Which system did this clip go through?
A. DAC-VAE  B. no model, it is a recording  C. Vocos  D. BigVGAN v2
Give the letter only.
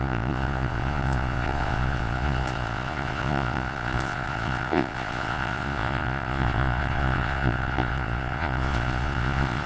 C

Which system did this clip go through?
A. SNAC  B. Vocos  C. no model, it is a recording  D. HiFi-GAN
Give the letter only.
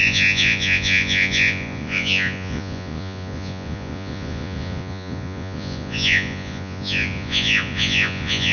B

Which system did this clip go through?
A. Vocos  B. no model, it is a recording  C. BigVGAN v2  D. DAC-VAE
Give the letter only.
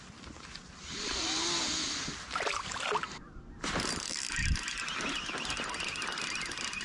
B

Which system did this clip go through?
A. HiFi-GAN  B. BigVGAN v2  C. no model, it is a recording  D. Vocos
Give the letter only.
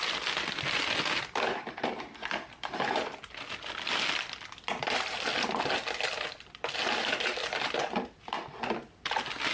C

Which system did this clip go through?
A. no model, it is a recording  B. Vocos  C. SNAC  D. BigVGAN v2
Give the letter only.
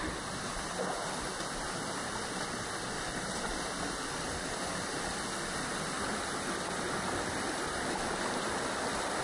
A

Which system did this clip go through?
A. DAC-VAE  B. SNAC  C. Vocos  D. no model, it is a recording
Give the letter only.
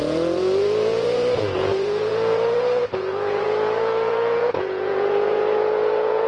C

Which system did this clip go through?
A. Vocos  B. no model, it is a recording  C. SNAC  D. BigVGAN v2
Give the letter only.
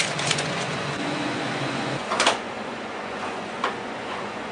A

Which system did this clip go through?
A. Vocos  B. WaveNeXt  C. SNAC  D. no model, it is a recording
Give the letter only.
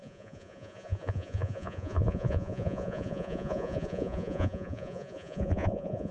A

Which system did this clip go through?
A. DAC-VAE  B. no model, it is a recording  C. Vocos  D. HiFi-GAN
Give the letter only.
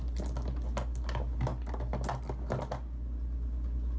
B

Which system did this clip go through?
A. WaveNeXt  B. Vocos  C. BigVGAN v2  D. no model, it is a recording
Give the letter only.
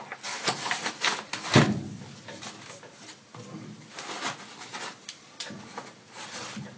D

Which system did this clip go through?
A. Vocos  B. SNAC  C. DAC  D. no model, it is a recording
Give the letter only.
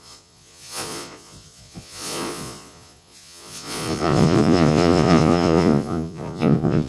A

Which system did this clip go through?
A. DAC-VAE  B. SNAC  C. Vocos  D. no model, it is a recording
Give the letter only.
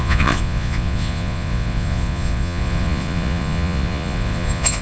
C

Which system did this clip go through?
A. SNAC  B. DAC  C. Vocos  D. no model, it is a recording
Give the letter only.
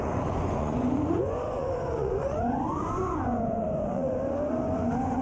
C